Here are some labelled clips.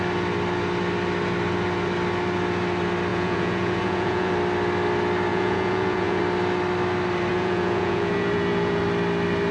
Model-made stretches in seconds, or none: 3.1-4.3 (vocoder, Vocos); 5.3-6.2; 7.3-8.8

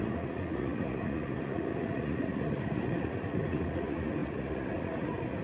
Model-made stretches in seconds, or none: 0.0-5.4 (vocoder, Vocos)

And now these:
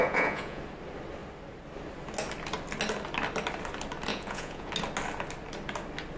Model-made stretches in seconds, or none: 0.0-0.6 (vocoder, Vocos); 4.1-4.7

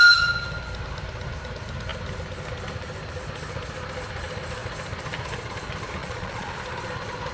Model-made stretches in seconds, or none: 6.0-6.6 (vocoder, Vocos)